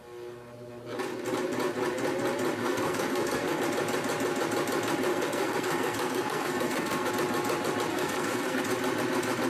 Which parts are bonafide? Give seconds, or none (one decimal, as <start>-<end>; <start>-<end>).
0.0-2.6; 3.6-5.1; 7.1-7.9; 8.6-9.5